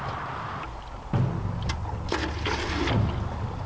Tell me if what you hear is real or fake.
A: real